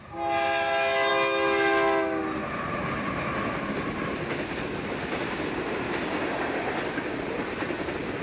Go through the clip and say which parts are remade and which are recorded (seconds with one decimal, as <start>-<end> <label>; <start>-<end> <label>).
0.0-8.2 recorded